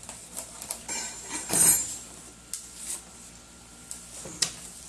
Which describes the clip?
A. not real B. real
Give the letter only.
B